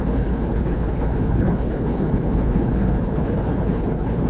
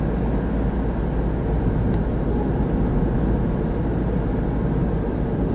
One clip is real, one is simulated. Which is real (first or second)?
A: second